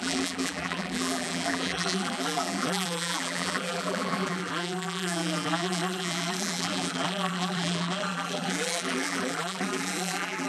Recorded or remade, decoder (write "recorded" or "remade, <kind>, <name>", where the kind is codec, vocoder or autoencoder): remade, vocoder, BigVGAN v2